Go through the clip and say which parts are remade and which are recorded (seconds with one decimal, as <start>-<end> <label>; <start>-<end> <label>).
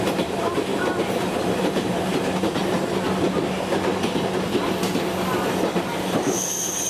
0.0-0.7 remade; 0.7-1.2 recorded; 1.2-2.6 remade; 2.6-6.9 recorded